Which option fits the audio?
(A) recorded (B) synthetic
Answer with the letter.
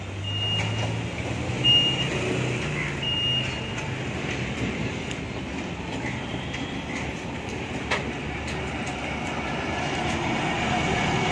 A